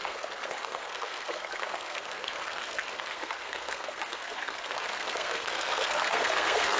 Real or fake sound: fake